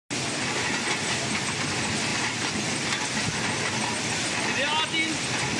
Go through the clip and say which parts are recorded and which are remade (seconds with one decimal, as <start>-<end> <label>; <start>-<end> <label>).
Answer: 0.0-5.6 recorded